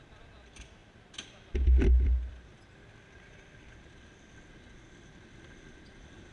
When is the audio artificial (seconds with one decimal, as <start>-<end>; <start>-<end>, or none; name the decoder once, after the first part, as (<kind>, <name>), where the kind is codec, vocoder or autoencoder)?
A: 0.0-0.8 (vocoder, BigVGAN v2); 2.3-6.3